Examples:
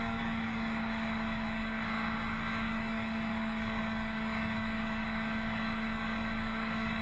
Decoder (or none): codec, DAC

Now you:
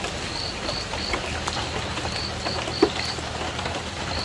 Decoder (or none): none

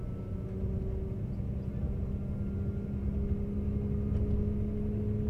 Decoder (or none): none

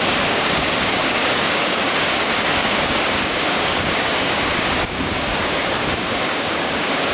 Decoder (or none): codec, DAC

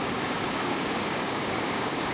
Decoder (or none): codec, DAC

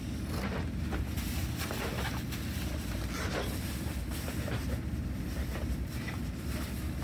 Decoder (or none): none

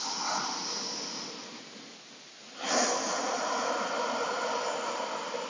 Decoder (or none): none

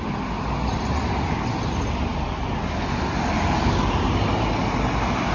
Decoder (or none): none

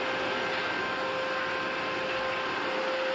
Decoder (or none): none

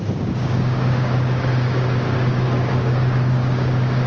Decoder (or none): codec, DAC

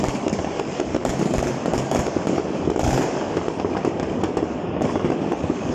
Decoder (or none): codec, DAC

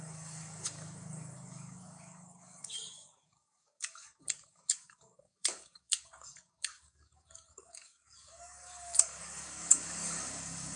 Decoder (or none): codec, DAC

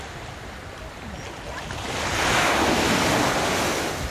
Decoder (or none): none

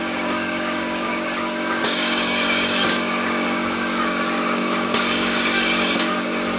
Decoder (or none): codec, DAC